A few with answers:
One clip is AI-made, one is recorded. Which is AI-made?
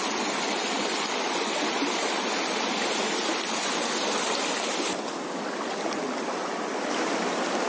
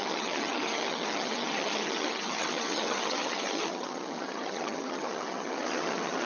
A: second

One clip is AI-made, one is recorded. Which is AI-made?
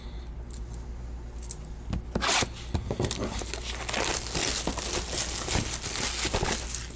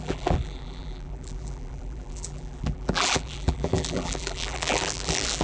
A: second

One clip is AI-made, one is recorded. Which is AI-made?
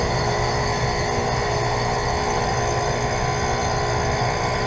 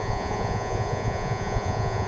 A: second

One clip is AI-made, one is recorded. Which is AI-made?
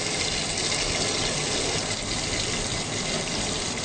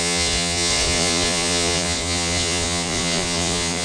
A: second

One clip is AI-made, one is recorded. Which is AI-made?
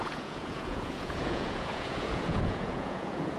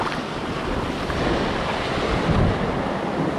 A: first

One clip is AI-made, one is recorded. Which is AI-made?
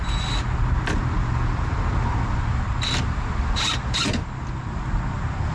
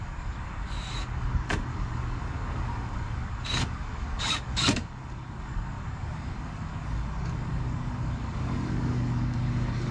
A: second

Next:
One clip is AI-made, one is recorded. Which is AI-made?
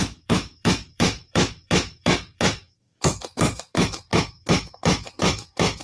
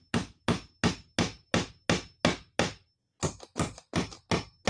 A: first